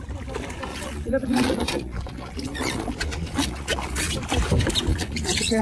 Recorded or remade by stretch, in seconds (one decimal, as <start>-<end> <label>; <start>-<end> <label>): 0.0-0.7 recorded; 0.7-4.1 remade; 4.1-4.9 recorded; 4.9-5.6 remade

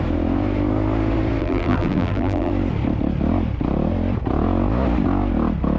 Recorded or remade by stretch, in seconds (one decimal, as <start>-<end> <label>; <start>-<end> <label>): 0.0-1.4 recorded; 1.4-2.5 remade; 2.5-5.8 recorded

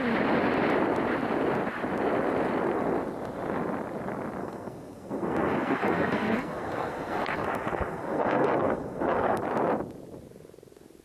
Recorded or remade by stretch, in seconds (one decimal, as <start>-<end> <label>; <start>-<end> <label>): 0.0-4.4 recorded; 4.4-9.4 remade; 9.4-11.0 recorded

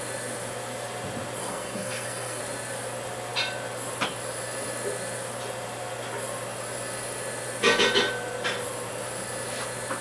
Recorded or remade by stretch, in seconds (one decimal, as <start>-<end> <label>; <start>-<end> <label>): 0.0-1.4 recorded; 1.4-2.4 remade; 2.4-10.0 recorded

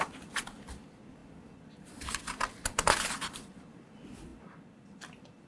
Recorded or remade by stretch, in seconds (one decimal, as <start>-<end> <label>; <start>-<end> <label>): 0.0-5.5 recorded

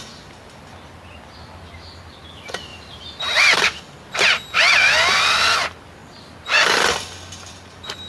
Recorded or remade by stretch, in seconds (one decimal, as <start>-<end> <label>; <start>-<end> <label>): 0.0-2.7 recorded; 2.7-3.8 remade; 3.8-8.1 recorded

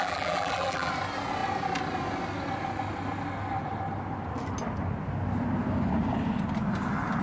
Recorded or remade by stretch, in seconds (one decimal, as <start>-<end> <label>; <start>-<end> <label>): 0.0-0.9 remade; 0.9-7.2 recorded